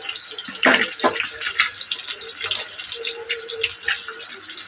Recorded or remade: recorded